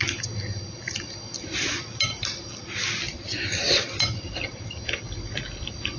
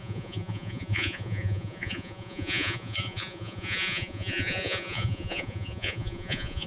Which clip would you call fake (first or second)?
second